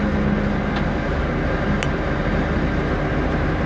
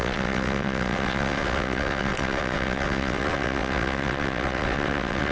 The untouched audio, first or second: first